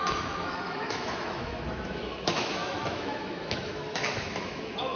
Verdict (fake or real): fake